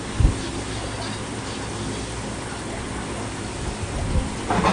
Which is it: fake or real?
real